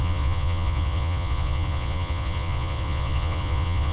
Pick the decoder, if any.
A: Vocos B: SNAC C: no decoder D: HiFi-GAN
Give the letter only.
A